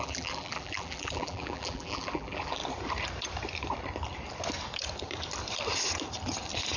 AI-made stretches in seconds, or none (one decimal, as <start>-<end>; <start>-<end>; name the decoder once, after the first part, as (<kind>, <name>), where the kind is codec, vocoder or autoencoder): 0.0-2.6 (vocoder, BigVGAN v2)